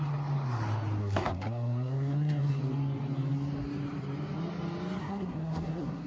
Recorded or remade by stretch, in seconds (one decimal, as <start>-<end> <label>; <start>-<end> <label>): 0.0-1.0 recorded; 1.0-2.6 remade; 2.6-5.0 recorded; 5.0-6.1 remade